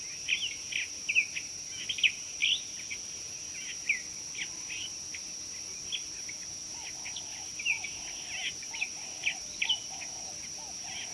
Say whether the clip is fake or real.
real